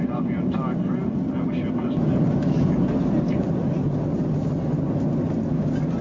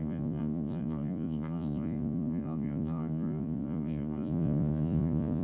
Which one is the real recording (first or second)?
first